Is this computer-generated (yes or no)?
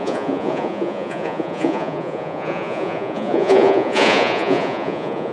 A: yes